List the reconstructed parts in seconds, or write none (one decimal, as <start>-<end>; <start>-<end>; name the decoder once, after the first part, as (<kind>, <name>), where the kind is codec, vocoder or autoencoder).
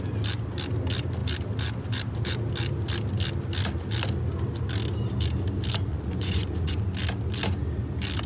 5.9-6.8 (vocoder, Vocos)